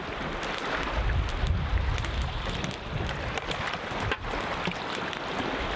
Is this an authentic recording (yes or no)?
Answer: yes